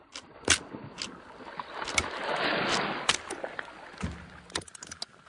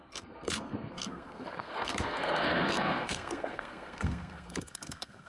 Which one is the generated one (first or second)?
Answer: second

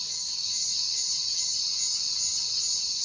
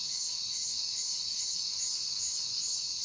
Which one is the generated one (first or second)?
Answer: second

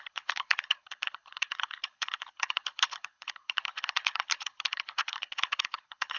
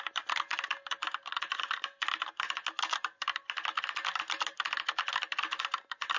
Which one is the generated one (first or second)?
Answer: first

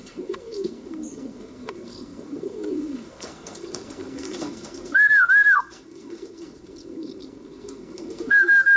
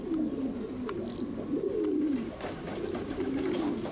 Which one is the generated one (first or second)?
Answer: first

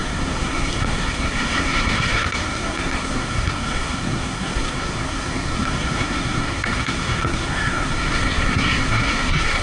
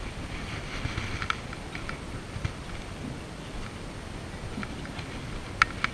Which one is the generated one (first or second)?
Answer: first